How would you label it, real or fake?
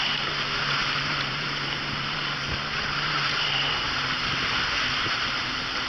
fake